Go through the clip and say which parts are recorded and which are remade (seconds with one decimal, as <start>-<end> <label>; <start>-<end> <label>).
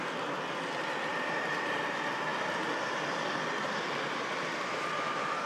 0.0-1.1 recorded; 1.1-1.8 remade; 1.8-5.5 recorded